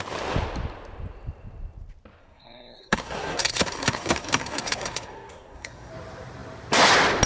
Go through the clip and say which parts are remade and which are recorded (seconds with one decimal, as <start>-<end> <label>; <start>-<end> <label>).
0.0-2.2 recorded; 2.2-5.9 remade; 5.9-7.3 recorded